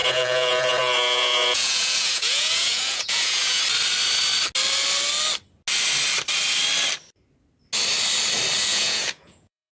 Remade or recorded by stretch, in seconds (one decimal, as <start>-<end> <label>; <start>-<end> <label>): 0.0-3.6 remade; 3.6-8.7 recorded; 8.7-9.7 remade